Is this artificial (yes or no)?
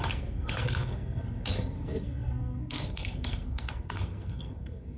yes